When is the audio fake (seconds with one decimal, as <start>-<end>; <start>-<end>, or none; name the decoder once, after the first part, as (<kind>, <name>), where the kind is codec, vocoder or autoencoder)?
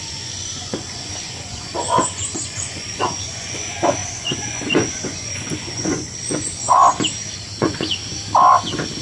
0.0-6.8 (vocoder, Vocos); 7.6-8.0